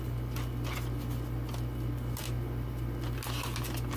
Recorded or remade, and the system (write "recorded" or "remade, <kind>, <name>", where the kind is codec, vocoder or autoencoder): recorded